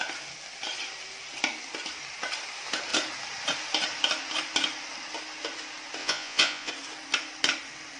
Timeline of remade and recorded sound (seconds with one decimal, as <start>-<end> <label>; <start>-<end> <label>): 0.0-6.0 recorded; 6.0-6.7 remade; 6.7-8.0 recorded